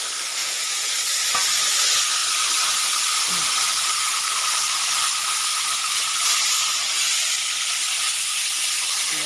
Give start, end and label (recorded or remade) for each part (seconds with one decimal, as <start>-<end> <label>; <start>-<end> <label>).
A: 0.0-0.4 recorded; 0.4-0.9 remade; 0.9-9.3 recorded